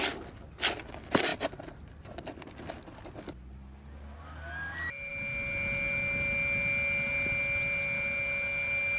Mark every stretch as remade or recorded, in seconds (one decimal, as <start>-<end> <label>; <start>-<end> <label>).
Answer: 0.0-9.0 recorded